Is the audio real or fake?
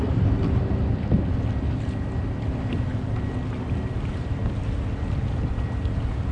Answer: real